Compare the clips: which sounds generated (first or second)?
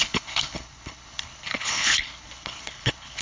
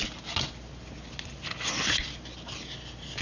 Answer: first